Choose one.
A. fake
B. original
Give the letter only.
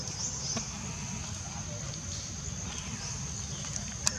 B